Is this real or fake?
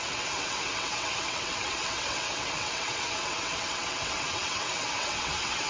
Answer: fake